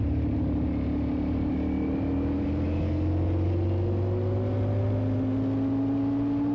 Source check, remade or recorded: recorded